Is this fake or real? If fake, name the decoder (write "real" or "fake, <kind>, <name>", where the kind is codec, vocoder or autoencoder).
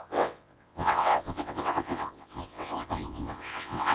fake, vocoder, WaveNeXt